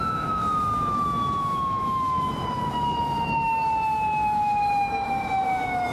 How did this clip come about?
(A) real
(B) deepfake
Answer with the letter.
B